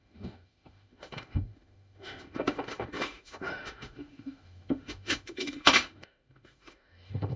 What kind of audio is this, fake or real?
fake